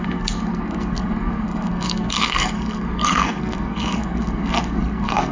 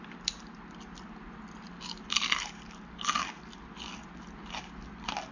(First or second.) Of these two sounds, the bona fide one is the second